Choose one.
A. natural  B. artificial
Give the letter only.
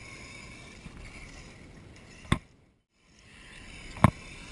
A